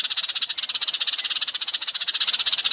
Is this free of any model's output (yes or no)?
yes